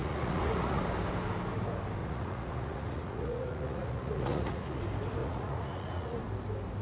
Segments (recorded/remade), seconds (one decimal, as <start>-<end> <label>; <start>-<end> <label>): 0.0-0.8 remade; 0.8-2.0 recorded; 2.0-4.8 remade; 4.8-5.2 recorded; 5.2-6.2 remade; 6.2-6.8 recorded